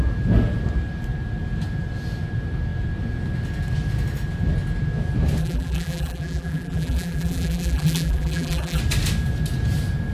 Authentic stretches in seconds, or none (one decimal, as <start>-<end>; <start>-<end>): 0.0-5.4; 8.8-10.1